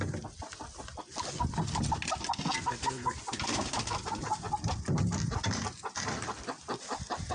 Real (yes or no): yes